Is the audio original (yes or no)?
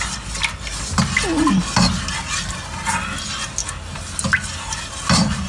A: yes